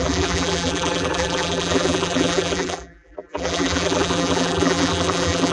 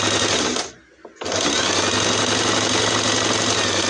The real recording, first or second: second